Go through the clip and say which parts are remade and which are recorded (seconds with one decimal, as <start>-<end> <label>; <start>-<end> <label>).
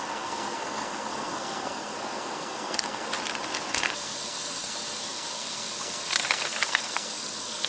0.0-3.1 remade; 3.1-3.7 recorded; 3.7-7.7 remade